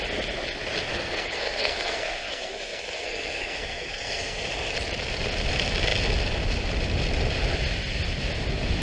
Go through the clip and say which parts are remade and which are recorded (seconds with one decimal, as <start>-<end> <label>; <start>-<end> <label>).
0.0-0.9 recorded; 0.9-4.5 remade; 4.5-8.8 recorded